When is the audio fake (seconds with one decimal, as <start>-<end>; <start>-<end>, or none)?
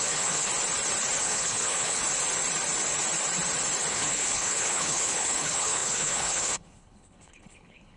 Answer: 0.0-0.5; 1.2-2.0; 3.9-8.0